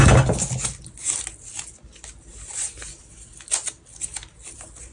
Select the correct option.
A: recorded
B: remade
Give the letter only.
A